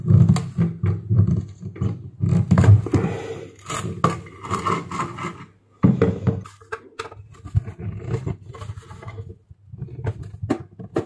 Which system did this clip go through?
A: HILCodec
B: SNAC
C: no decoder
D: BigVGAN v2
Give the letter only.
C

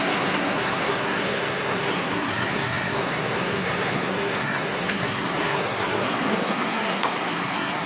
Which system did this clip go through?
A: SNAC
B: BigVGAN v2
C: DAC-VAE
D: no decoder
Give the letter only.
A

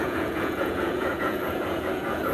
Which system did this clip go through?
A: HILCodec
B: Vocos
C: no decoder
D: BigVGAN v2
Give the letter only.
B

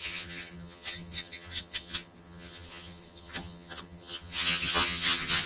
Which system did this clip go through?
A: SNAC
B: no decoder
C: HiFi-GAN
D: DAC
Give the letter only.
C